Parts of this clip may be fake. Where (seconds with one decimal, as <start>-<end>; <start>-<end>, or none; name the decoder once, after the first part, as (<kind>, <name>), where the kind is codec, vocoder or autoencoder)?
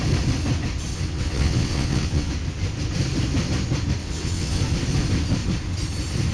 0.9-2.3 (vocoder, WaveNeXt); 4.0-4.6